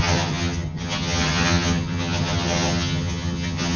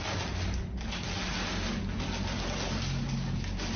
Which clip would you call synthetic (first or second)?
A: first